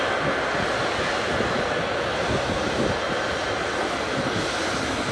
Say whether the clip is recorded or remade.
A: recorded